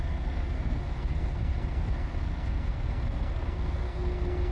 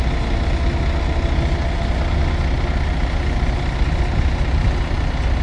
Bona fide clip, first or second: second